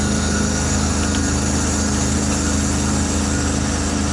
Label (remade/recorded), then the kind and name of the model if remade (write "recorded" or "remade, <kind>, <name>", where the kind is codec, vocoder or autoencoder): recorded